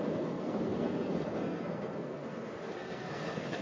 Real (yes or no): no